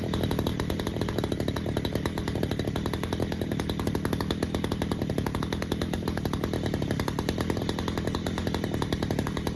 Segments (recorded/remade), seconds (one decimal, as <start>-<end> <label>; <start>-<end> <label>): 0.0-0.5 recorded; 0.5-1.2 remade; 1.2-9.6 recorded